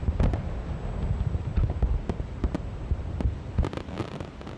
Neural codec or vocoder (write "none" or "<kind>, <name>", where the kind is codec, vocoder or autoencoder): none